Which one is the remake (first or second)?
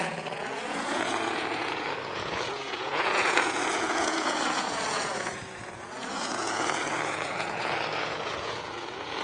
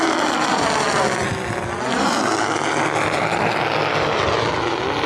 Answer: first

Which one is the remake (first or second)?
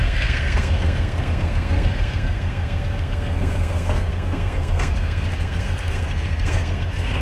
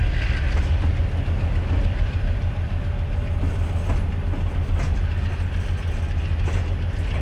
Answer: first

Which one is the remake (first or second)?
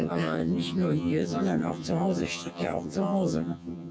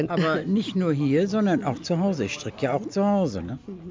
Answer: first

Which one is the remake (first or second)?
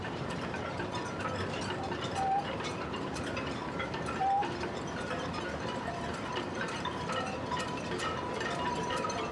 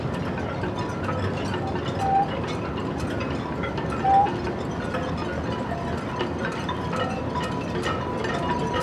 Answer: first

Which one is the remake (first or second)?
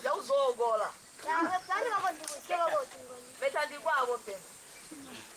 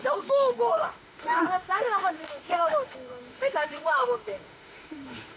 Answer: second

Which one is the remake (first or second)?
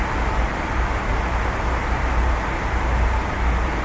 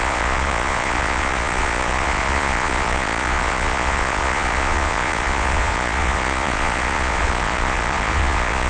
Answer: second